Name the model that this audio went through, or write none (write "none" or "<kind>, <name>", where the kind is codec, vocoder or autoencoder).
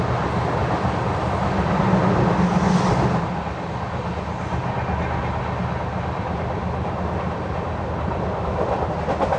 none